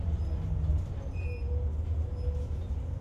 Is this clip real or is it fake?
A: real